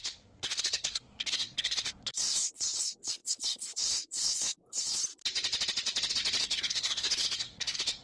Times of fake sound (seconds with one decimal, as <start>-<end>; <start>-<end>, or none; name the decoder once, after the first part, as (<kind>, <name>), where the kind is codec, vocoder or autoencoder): 0.0-5.0 (codec, SNAC); 6.4-8.0